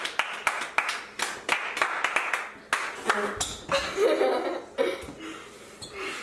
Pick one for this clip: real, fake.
real